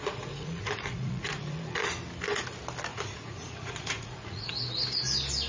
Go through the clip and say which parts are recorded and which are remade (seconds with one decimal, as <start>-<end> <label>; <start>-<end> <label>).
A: 0.0-1.8 remade; 1.8-2.9 recorded; 2.9-4.5 remade; 4.5-5.5 recorded